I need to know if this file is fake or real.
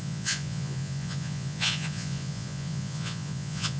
fake